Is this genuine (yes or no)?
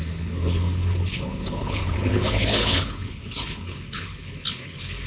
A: no